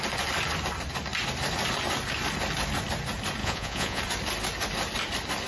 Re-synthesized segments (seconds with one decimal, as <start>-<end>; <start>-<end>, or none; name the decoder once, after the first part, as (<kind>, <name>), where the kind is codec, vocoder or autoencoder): 3.4-4.0 (vocoder, Vocos)